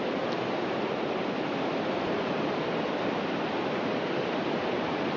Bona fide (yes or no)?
no